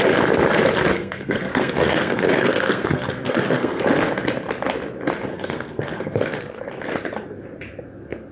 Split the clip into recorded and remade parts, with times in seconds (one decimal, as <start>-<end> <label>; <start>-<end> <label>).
0.0-0.9 recorded; 0.9-3.8 remade; 3.8-5.3 recorded; 5.3-6.6 remade; 6.6-8.3 recorded